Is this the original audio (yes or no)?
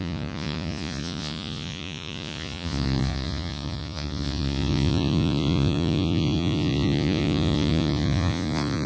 no